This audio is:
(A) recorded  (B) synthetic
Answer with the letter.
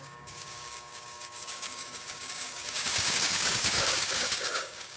B